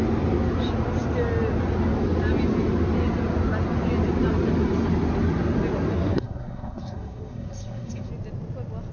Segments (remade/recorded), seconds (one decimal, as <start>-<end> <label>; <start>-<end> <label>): 0.0-5.9 recorded; 5.9-8.1 remade; 8.1-8.9 recorded